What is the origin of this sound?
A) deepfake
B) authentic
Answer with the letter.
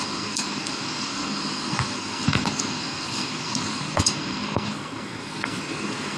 A